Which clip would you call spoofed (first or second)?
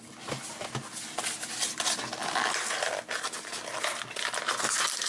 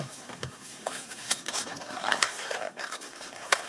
second